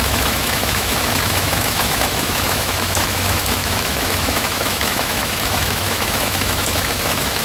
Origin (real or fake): fake